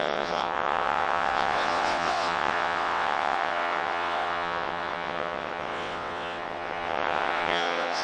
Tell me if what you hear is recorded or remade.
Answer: remade